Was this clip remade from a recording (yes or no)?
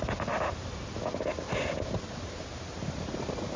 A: no